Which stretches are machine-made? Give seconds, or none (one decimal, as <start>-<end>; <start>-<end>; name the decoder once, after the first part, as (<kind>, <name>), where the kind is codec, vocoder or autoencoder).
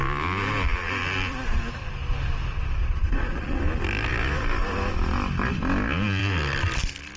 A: 2.8-3.6 (vocoder, Vocos)